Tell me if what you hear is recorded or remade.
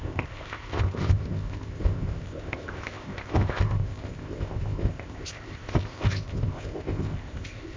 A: remade